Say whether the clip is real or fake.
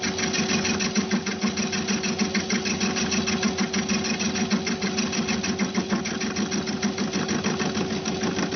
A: real